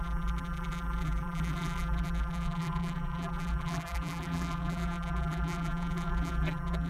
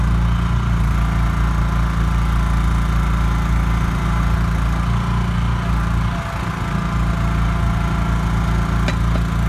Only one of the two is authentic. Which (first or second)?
second